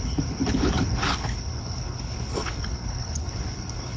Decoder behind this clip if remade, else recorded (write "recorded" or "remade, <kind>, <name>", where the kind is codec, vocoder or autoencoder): remade, codec, HILCodec